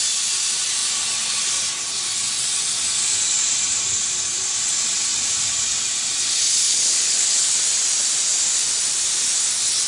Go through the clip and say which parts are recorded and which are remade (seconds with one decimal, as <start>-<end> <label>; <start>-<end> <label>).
0.0-6.6 recorded; 6.6-7.6 remade; 7.6-9.9 recorded